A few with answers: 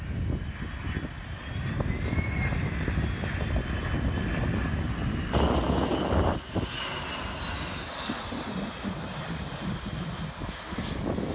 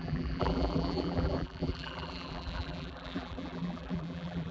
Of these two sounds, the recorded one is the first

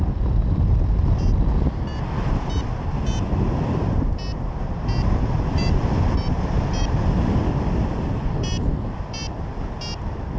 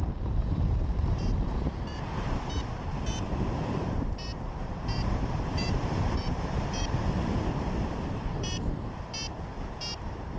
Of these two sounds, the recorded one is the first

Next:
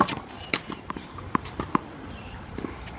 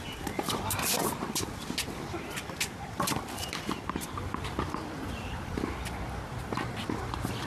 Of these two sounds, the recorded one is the second